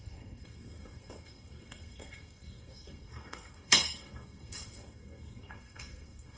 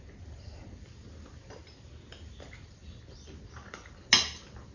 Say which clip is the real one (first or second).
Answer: second